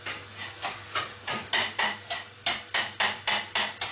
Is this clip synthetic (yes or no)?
no